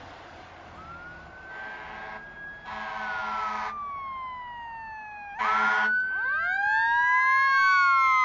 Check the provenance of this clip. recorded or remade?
recorded